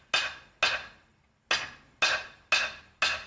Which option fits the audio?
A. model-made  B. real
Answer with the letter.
B